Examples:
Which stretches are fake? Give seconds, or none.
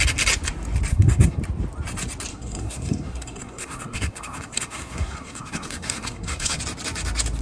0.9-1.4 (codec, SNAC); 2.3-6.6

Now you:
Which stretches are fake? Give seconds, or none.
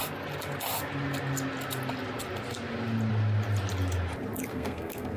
4.5-5.2 (codec, SNAC)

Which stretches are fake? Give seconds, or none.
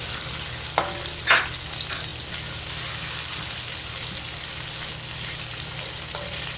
none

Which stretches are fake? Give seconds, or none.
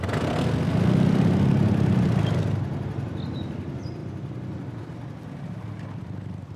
none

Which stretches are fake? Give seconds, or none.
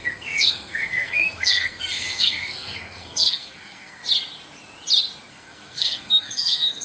0.0-4.0 (codec, SNAC); 5.3-6.8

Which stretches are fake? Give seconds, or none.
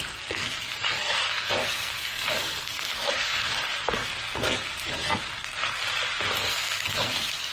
0.0-5.8 (codec, SNAC); 6.4-7.5